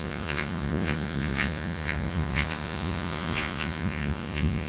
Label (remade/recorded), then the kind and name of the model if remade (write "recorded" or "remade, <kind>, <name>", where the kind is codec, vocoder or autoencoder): remade, vocoder, Vocos